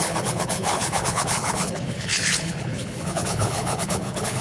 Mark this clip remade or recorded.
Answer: remade